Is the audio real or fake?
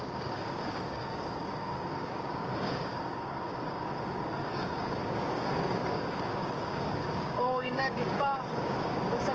fake